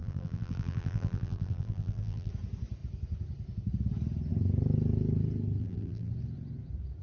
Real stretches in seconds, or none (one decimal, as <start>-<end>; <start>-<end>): 2.3-5.6; 6.1-7.0